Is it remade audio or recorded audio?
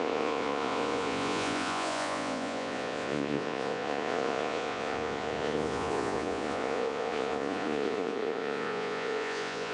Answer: remade